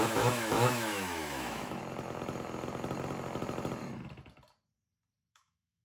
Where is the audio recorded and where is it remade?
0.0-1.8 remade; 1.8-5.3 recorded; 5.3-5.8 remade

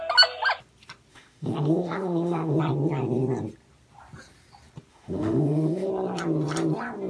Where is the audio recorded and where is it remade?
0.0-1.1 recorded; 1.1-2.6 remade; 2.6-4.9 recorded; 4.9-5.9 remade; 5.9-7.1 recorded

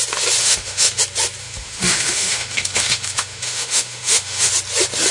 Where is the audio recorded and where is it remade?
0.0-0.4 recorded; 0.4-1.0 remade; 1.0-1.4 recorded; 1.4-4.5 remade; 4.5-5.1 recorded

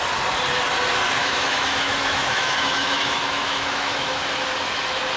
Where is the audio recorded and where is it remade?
0.0-1.2 recorded; 1.2-4.3 remade; 4.3-5.2 recorded

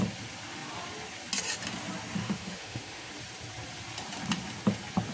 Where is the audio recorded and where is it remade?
0.0-2.2 recorded; 2.2-3.1 remade; 3.1-5.1 recorded